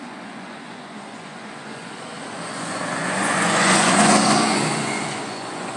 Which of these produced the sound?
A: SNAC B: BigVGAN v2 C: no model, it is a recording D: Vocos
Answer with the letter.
D